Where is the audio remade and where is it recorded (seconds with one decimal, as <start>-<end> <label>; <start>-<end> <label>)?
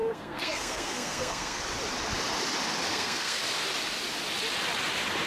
0.0-1.6 remade; 1.6-2.9 recorded; 2.9-3.4 remade; 3.4-5.3 recorded